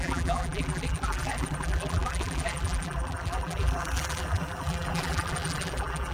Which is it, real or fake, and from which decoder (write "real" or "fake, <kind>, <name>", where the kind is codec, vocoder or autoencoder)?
fake, vocoder, BigVGAN v2